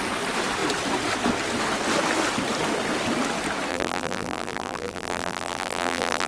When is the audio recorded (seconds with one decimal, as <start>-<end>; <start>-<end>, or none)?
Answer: 0.0-3.7